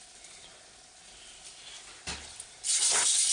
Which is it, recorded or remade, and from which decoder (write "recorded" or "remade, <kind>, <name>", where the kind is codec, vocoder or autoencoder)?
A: recorded